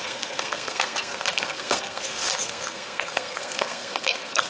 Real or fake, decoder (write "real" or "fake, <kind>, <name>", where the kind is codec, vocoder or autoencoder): fake, codec, SNAC